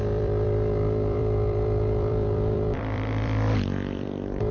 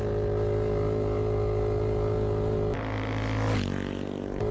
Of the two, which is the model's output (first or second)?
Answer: first